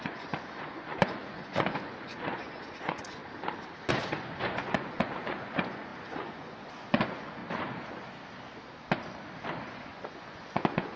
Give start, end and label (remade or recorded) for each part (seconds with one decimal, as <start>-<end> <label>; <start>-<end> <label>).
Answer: 0.0-3.2 remade; 3.2-3.9 recorded; 3.9-7.4 remade; 7.4-9.6 recorded; 9.6-11.0 remade